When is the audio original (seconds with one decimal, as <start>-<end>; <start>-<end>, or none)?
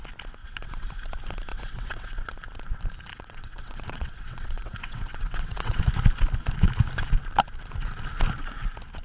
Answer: 0.0-0.4; 0.9-1.5; 2.3-3.1; 5.8-9.0